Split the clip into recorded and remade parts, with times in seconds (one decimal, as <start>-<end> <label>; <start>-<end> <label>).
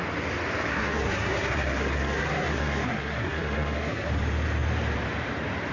0.0-0.7 recorded; 0.7-4.1 remade; 4.1-5.7 recorded